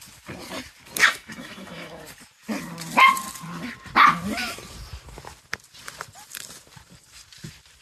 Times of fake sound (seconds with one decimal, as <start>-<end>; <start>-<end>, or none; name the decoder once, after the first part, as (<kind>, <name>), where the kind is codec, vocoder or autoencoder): 1.0-2.0 (autoencoder, DAC-VAE)

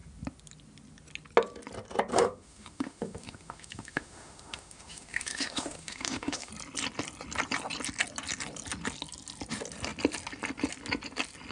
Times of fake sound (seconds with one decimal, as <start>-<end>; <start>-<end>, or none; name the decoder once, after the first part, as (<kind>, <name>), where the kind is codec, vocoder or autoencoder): 2.1-6.5 (autoencoder, DAC-VAE)